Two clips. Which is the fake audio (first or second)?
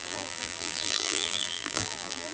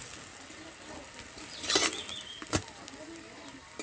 first